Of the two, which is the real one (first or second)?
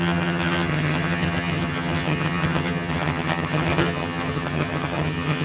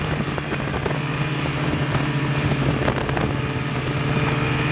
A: second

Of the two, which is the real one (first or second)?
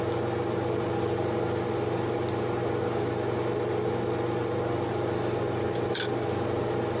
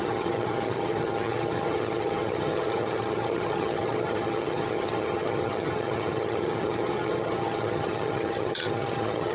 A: first